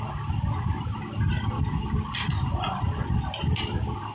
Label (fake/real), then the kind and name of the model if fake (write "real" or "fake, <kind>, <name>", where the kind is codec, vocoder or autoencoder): real